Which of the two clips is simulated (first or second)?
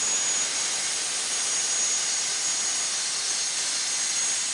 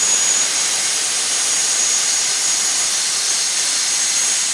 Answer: second